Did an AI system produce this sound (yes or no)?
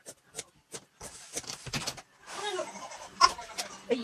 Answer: no